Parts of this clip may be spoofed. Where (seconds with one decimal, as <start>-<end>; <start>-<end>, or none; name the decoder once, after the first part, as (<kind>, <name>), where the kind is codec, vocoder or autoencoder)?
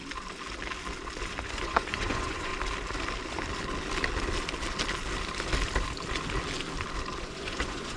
1.5-2.5 (vocoder, Vocos); 7.2-8.0